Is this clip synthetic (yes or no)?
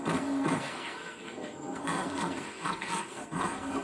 yes